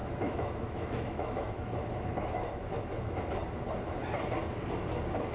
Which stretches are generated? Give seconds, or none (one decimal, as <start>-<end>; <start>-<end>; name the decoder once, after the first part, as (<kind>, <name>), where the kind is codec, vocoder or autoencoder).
0.0-3.2 (autoencoder, DAC-VAE)